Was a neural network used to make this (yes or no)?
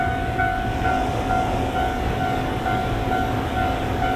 yes